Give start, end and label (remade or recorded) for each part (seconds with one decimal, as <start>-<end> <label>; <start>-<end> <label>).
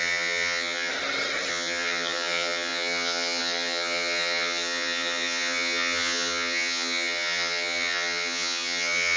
0.0-0.9 remade; 0.9-1.5 recorded; 1.5-9.2 remade